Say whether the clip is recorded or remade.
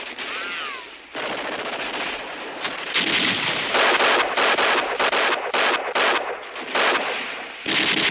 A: recorded